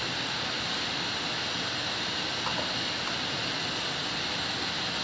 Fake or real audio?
real